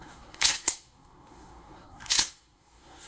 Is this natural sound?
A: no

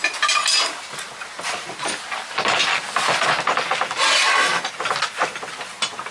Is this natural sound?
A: yes